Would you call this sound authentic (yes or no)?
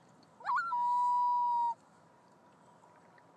yes